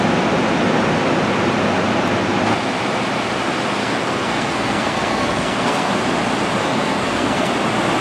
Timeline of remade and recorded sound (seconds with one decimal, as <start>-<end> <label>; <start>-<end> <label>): 0.0-3.8 recorded; 3.8-5.9 remade; 5.9-6.6 recorded; 6.6-7.5 remade; 7.5-8.0 recorded